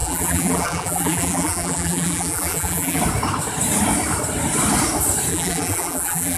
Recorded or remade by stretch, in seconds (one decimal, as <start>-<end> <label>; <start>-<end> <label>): 0.0-3.0 remade; 3.0-5.3 recorded; 5.3-6.4 remade